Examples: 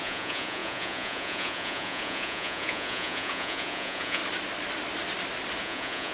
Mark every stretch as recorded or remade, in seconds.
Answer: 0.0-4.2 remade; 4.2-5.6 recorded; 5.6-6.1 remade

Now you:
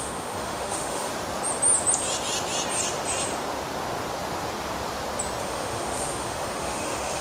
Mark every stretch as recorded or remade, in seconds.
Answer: 0.0-1.1 remade; 1.1-5.4 recorded; 5.4-7.2 remade

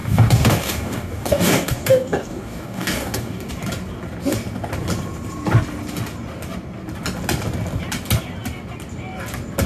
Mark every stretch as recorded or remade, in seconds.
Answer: 0.0-3.5 remade; 3.5-9.7 recorded